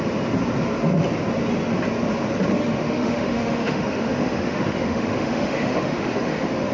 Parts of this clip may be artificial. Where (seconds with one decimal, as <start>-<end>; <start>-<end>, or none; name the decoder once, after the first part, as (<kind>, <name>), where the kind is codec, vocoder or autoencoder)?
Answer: 2.6-6.7 (autoencoder, DAC-VAE)